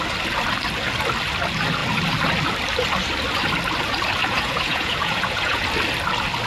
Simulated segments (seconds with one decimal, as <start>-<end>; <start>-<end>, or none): 4.2-5.6

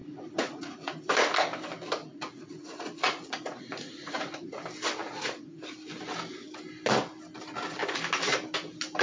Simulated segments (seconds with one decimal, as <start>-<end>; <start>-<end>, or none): 0.0-1.1; 2.0-4.6; 5.0-5.6

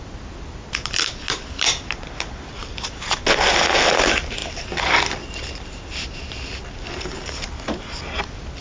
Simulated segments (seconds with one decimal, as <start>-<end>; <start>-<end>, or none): none

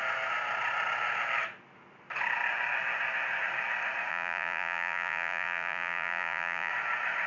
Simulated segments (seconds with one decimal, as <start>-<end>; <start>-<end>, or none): 4.1-6.7

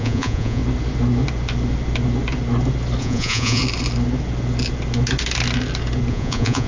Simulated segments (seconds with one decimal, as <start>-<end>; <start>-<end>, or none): 0.0-0.6; 3.0-3.6; 6.1-6.7

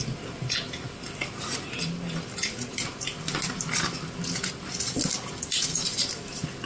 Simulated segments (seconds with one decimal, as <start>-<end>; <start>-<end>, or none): none

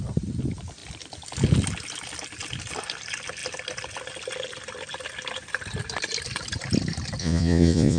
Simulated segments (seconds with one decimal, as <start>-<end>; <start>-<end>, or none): 7.2-8.0